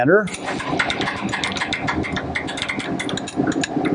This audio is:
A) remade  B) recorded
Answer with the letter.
B